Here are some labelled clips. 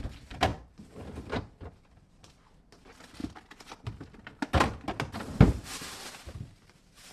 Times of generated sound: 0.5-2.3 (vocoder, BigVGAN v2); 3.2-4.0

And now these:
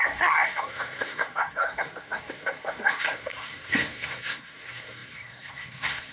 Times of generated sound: 0.0-6.1 (codec, SNAC)

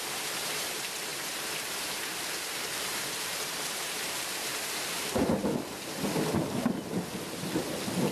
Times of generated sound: 0.0-5.4 (vocoder, BigVGAN v2)

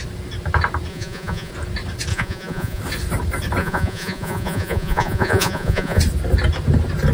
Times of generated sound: 0.9-1.5 (vocoder, Vocos); 2.1-2.8; 3.6-6.0

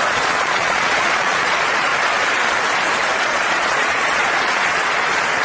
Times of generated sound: 0.0-1.9 (vocoder, Vocos); 3.2-5.4

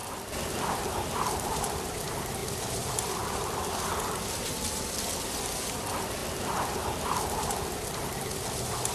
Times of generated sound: 0.0-8.9 (vocoder, BigVGAN v2)

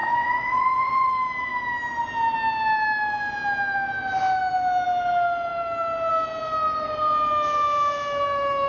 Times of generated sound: 0.0-1.1 (vocoder, Vocos)